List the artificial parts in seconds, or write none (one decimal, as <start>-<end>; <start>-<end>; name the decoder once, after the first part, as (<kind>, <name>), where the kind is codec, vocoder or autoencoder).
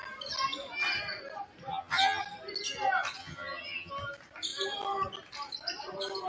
1.7-2.2 (vocoder, HiFi-GAN); 3.2-3.9